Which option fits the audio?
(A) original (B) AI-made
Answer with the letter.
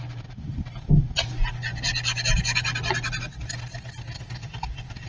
A